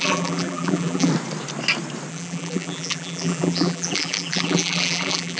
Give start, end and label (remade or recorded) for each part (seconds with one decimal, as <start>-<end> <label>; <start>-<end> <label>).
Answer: 0.0-1.1 remade; 1.1-2.1 recorded; 2.1-5.4 remade